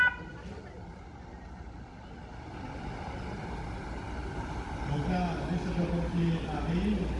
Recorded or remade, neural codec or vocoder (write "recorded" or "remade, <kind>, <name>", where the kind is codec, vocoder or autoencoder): recorded